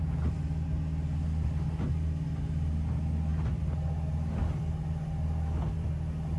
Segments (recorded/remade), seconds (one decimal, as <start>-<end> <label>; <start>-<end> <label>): 0.0-6.4 recorded